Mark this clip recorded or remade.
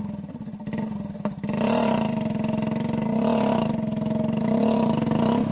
recorded